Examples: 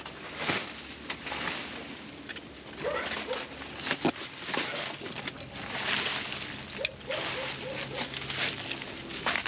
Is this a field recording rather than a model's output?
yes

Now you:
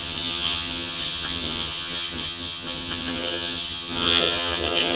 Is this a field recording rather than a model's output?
no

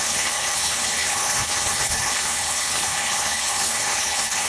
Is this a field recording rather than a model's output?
no